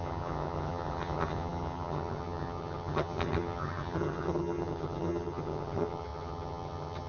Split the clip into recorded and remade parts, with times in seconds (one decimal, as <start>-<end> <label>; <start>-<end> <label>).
0.0-7.1 remade